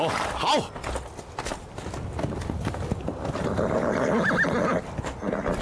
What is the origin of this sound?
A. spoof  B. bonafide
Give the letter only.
B